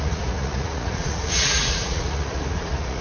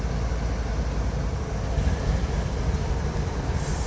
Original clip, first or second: second